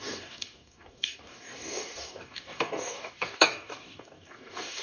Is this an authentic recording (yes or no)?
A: no